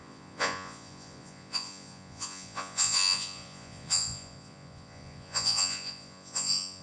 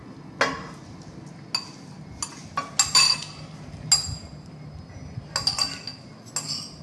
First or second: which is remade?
first